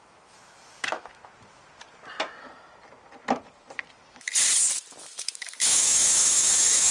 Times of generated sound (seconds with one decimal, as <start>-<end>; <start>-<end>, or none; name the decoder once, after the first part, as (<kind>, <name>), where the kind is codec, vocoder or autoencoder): 0.0-1.2 (autoencoder, DAC-VAE); 3.9-4.3; 5.0-6.9